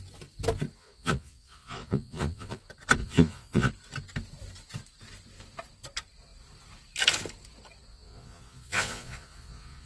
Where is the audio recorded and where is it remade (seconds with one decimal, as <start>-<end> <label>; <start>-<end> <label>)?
0.0-0.8 recorded; 0.8-2.6 remade; 2.6-3.0 recorded; 3.0-3.7 remade; 3.7-7.9 recorded; 7.9-9.9 remade